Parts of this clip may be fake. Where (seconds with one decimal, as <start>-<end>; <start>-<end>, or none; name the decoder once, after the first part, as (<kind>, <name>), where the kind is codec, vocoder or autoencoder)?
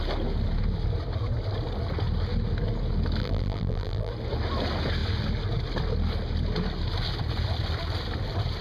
3.2-4.1 (vocoder, BigVGAN v2)